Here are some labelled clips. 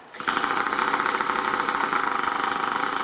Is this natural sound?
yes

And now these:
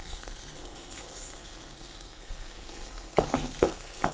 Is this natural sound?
no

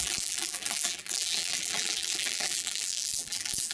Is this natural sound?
no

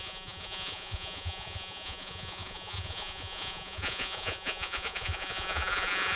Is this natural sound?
no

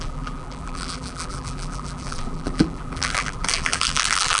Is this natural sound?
no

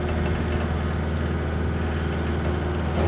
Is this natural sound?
yes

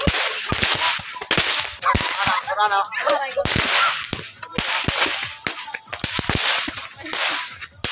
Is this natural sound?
yes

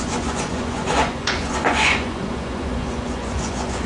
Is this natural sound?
no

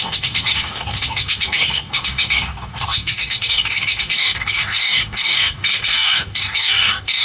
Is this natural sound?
no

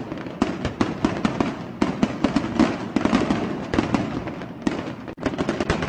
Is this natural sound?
yes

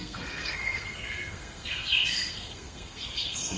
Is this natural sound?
no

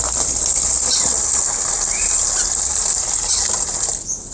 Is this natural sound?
yes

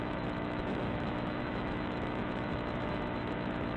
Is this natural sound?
no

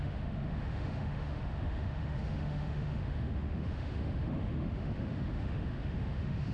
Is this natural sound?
no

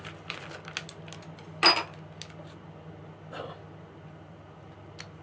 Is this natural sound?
yes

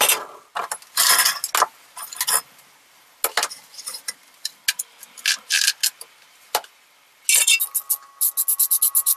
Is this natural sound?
yes